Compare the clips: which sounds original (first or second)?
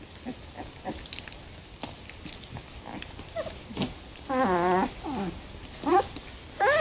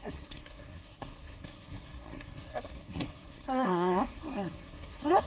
first